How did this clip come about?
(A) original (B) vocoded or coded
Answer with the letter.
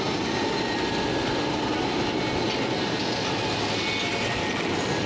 A